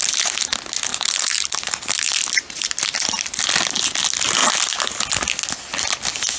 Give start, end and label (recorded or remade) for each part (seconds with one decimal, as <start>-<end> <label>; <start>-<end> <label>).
0.0-0.9 recorded; 0.9-3.4 remade; 3.4-6.4 recorded